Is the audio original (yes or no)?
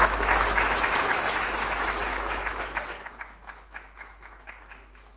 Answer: no